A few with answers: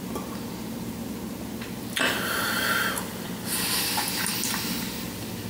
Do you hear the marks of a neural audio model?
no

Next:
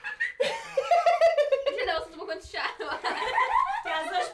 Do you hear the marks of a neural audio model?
no